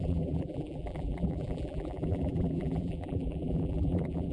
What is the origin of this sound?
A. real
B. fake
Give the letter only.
B